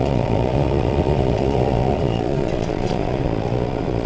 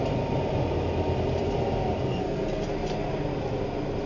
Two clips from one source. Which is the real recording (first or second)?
second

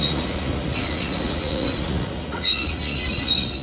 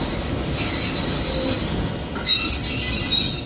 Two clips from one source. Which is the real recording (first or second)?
second